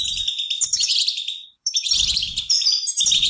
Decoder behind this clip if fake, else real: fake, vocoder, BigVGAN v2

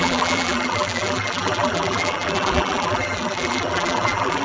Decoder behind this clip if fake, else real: fake, vocoder, BigVGAN v2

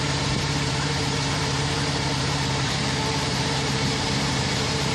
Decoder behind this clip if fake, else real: fake, vocoder, BigVGAN v2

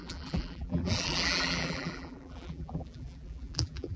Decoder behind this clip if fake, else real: fake, vocoder, BigVGAN v2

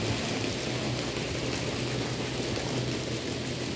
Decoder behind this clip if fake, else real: real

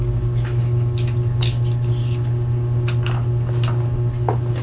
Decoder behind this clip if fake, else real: real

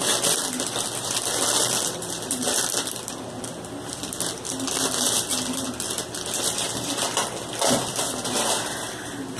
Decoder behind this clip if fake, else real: fake, vocoder, BigVGAN v2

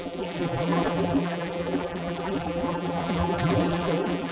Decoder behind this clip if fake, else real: fake, vocoder, BigVGAN v2